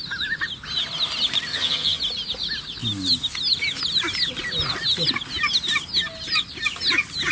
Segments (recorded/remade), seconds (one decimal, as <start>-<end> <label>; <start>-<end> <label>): 0.0-1.5 recorded; 1.5-2.0 remade; 2.0-7.3 recorded